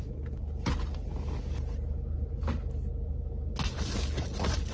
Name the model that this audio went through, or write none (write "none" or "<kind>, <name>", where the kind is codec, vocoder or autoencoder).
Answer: none